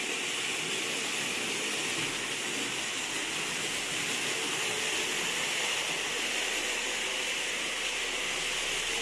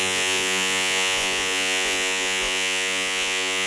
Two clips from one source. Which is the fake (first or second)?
second